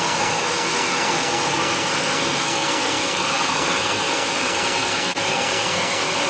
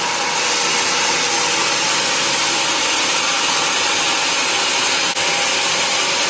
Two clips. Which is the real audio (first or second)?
second